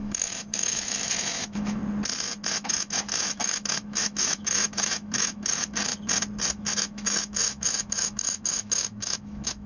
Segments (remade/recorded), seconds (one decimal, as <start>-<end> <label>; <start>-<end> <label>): 0.0-1.8 remade; 1.8-2.5 recorded; 2.5-5.9 remade; 5.9-6.5 recorded; 6.5-9.7 remade